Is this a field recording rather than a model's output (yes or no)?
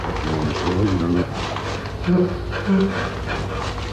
yes